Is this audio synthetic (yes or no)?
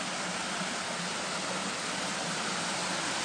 no